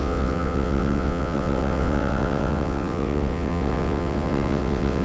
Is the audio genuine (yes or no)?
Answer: no